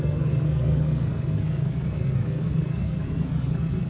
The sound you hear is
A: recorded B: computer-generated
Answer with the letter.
B